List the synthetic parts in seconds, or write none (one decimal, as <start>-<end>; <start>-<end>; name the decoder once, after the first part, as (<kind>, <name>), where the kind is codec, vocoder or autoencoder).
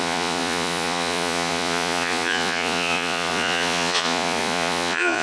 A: 0.0-5.2 (vocoder, Vocos)